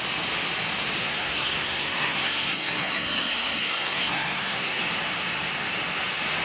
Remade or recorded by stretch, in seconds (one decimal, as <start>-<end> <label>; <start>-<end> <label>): 0.0-1.0 recorded; 1.0-4.8 remade; 4.8-6.4 recorded